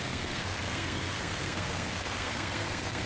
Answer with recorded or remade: remade